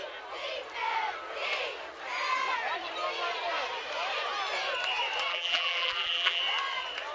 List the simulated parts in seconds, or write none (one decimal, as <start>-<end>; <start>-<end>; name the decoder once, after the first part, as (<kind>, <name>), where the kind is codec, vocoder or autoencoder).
5.3-6.4 (vocoder, BigVGAN v2)